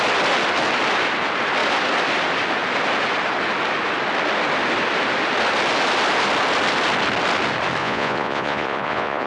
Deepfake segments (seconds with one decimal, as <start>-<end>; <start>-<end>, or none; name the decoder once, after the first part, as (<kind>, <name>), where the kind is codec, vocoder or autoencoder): 7.8-9.3 (vocoder, Vocos)